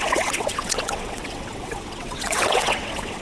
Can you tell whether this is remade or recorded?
remade